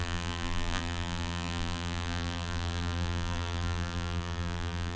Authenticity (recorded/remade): remade